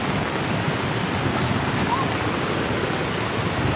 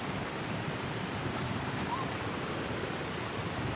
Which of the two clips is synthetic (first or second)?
second